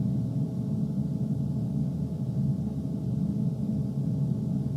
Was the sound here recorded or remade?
recorded